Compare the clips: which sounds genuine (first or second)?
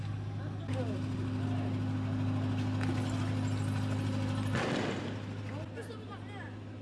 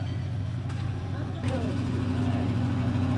first